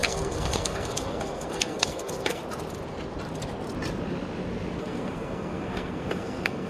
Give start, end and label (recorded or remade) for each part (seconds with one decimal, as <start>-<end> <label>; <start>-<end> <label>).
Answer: 0.0-2.4 remade; 2.4-4.8 recorded; 4.8-6.7 remade